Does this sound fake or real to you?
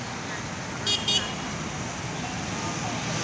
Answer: real